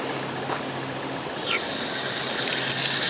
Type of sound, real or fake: real